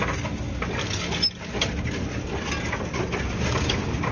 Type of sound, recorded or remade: recorded